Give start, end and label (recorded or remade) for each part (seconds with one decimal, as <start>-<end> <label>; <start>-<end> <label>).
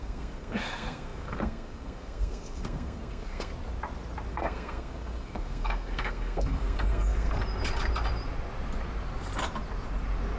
0.0-3.5 remade; 3.5-4.3 recorded; 4.3-7.4 remade; 7.4-10.4 recorded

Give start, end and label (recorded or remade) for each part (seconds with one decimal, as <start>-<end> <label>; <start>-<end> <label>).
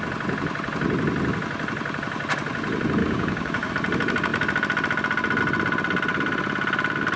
0.0-3.0 recorded; 3.0-3.7 remade; 3.7-7.2 recorded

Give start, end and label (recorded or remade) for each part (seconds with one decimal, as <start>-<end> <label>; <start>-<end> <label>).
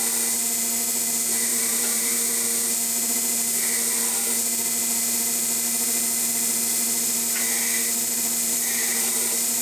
0.0-1.5 recorded; 1.5-2.3 remade; 2.3-8.5 recorded; 8.5-9.6 remade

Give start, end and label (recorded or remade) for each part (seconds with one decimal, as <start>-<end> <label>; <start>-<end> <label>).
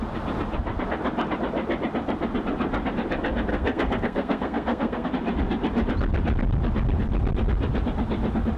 0.0-3.5 recorded; 3.5-5.1 remade; 5.1-8.6 recorded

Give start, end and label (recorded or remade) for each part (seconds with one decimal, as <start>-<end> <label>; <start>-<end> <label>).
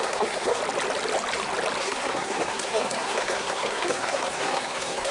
0.0-0.6 remade; 0.6-1.8 recorded; 1.8-5.1 remade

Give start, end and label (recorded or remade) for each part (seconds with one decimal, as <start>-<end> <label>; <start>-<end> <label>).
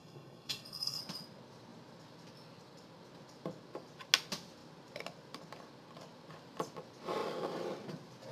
0.0-1.0 remade; 1.0-8.3 recorded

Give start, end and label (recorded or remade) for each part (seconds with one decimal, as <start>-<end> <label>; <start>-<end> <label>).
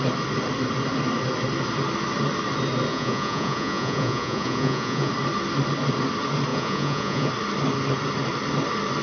0.0-2.9 recorded; 2.9-5.1 remade; 5.1-6.5 recorded; 6.5-7.3 remade; 7.3-9.0 recorded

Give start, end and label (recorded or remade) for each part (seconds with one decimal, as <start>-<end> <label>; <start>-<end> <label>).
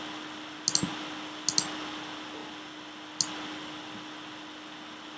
0.0-5.2 recorded